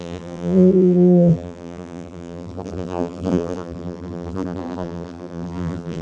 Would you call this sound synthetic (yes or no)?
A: yes